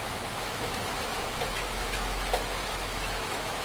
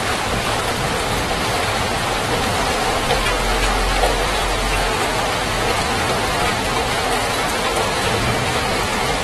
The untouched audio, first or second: second